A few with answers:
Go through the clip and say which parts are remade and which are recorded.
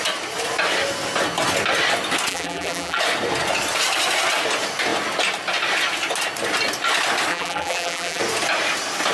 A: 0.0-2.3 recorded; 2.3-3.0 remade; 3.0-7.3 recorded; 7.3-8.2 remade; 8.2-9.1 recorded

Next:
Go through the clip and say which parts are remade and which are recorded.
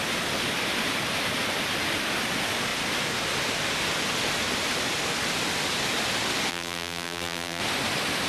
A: 0.0-6.5 recorded; 6.5-7.6 remade; 7.6-8.3 recorded